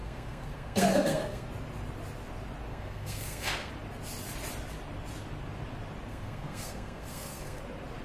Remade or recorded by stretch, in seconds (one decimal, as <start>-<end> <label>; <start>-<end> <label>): 0.0-1.5 remade; 1.5-2.7 recorded; 2.7-3.7 remade; 3.7-6.1 recorded; 6.1-7.6 remade; 7.6-8.0 recorded